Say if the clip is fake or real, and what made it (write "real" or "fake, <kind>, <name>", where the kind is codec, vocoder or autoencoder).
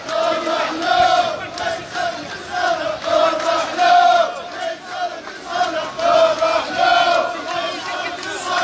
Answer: real